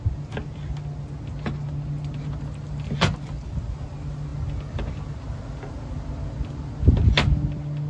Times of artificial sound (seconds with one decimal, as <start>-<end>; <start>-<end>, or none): none